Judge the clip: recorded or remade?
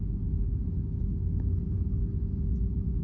recorded